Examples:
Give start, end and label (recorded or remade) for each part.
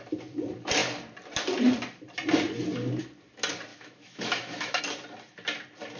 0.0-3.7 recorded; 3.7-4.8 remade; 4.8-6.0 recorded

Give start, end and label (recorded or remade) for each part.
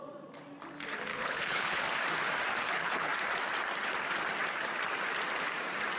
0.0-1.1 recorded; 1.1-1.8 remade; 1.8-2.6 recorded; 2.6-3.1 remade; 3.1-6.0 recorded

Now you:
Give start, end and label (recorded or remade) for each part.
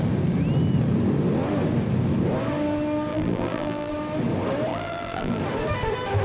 0.0-3.1 recorded; 3.1-3.9 remade; 3.9-4.7 recorded; 4.7-5.4 remade; 5.4-6.2 recorded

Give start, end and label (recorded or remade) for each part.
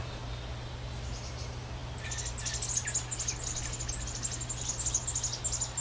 0.0-5.8 recorded